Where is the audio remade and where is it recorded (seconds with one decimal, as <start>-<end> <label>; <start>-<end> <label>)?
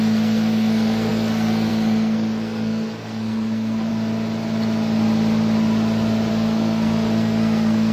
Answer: 0.0-3.9 remade; 3.9-6.3 recorded; 6.3-7.9 remade